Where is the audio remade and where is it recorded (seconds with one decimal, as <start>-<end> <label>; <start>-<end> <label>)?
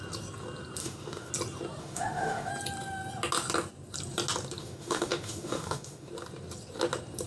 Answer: 0.0-0.8 recorded; 0.8-1.3 remade; 1.3-1.8 recorded; 1.8-2.5 remade; 2.5-4.6 recorded; 4.6-6.1 remade; 6.1-7.3 recorded